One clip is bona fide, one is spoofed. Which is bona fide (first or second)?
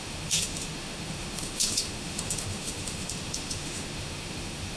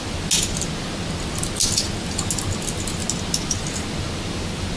second